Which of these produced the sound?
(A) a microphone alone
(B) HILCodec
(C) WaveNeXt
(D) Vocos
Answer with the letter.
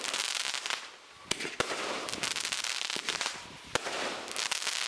A